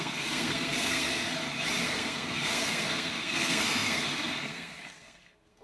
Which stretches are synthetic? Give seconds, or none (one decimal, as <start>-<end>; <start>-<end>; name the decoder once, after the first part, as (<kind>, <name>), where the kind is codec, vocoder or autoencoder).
0.0-1.3 (codec, SNAC); 1.8-5.6